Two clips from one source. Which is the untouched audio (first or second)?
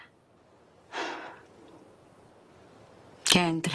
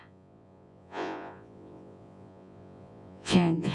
first